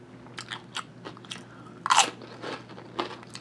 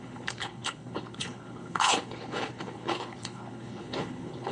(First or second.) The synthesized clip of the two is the second